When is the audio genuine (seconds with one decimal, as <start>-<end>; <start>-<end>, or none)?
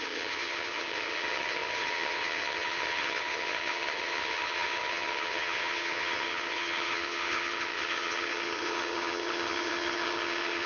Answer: none